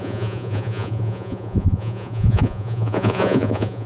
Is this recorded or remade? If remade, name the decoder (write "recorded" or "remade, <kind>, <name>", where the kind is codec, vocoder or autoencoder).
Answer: remade, vocoder, Vocos